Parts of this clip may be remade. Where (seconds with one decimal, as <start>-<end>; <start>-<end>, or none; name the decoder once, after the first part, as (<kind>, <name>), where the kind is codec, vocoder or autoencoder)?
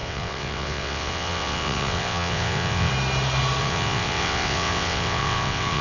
0.0-2.9 (vocoder, WaveNeXt); 3.6-5.8